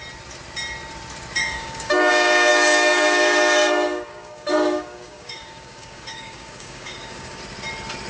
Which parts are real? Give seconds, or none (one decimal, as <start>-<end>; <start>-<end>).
0.0-1.4; 2.1-2.5; 7.4-8.1